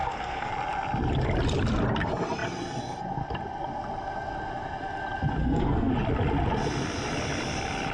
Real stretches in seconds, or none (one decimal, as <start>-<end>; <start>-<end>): 0.5-5.4; 5.9-7.9